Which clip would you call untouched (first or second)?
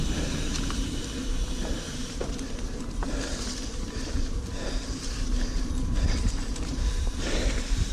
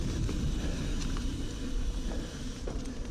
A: second